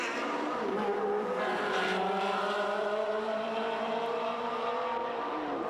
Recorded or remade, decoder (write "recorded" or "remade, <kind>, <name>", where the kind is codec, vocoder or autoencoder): remade, vocoder, BigVGAN v2